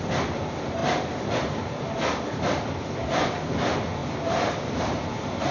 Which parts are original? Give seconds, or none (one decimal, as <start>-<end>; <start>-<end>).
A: 0.0-5.5